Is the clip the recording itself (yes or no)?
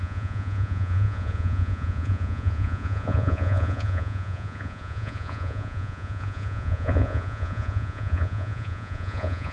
no